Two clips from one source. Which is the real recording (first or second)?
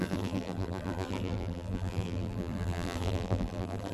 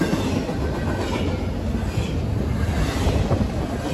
second